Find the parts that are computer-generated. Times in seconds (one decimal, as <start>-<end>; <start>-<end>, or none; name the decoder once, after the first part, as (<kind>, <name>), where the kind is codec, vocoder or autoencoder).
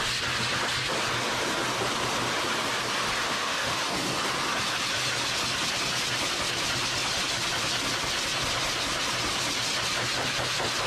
3.2-3.8 (autoencoder, DAC-VAE)